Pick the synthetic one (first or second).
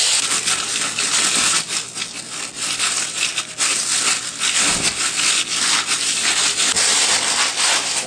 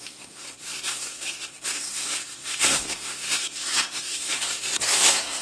second